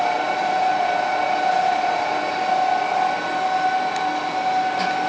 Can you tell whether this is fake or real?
real